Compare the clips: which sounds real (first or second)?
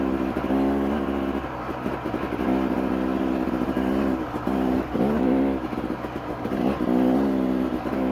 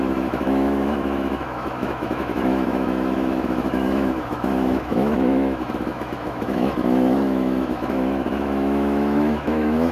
first